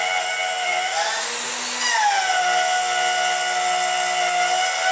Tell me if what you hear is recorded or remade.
recorded